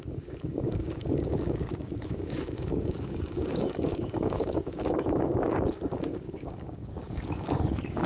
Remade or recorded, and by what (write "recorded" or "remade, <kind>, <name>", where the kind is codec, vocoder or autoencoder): remade, codec, DAC